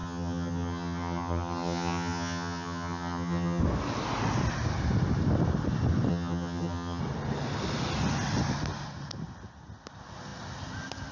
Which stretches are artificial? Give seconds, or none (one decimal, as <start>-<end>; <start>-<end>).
0.0-3.6; 6.1-7.0